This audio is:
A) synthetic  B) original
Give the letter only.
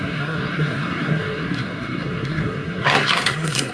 A